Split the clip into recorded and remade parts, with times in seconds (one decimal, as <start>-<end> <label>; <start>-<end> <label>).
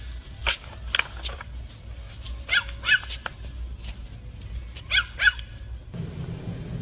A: 0.0-6.8 recorded